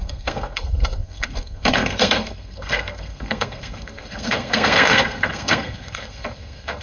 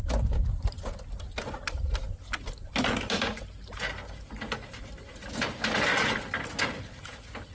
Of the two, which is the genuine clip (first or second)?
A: second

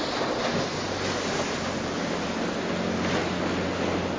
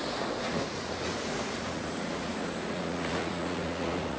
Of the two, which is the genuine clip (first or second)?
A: first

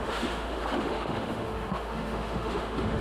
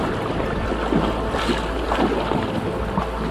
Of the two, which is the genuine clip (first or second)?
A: second